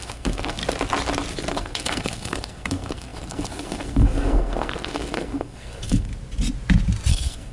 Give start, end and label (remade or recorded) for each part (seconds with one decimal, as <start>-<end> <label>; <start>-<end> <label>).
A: 0.0-0.6 remade; 0.6-1.5 recorded; 1.5-6.1 remade; 6.1-7.1 recorded; 7.1-7.5 remade